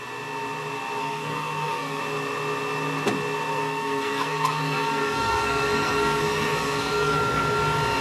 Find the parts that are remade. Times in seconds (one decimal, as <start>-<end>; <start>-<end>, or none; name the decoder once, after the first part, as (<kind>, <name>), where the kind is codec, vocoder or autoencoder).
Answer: 1.0-2.0 (codec, SNAC); 3.5-7.2